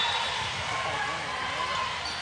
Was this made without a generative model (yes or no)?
yes